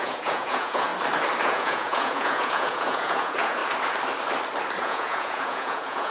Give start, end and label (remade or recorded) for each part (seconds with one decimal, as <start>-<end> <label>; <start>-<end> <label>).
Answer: 0.0-0.9 remade; 0.9-1.4 recorded; 1.4-3.6 remade; 3.6-4.8 recorded; 4.8-6.1 remade

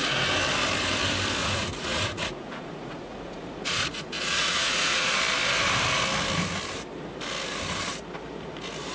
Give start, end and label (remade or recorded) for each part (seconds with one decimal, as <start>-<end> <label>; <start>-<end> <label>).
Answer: 0.0-1.4 recorded; 1.4-5.1 remade; 5.1-8.9 recorded

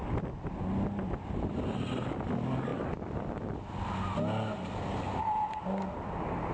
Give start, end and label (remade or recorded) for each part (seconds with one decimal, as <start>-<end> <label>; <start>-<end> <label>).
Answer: 0.0-6.5 recorded